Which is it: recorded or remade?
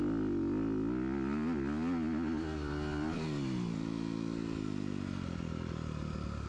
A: recorded